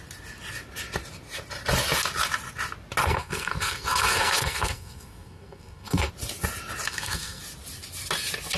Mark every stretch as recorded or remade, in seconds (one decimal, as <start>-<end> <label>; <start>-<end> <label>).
0.0-3.0 recorded; 3.0-6.1 remade; 6.1-6.9 recorded; 6.9-7.4 remade; 7.4-8.6 recorded